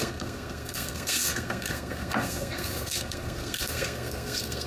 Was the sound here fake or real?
fake